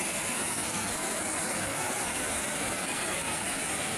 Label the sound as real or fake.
fake